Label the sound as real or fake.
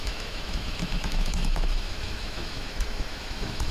fake